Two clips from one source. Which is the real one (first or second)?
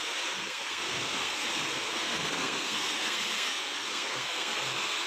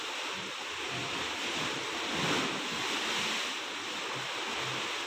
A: second